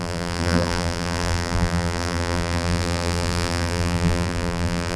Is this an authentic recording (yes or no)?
no